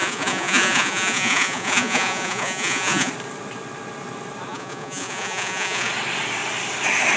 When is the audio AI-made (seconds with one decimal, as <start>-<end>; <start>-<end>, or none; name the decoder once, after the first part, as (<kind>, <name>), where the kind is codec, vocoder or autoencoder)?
0.0-3.1 (vocoder, Vocos); 4.5-5.9